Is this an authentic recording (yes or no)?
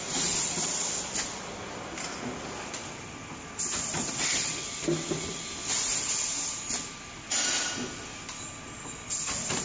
yes